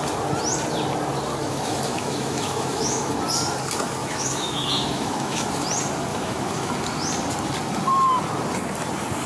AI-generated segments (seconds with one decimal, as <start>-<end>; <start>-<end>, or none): 1.4-3.1; 4.0-5.5; 6.1-6.7